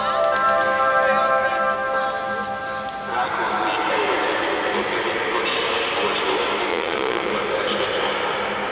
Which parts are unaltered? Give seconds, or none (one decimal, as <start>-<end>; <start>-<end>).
0.0-6.7; 7.3-8.7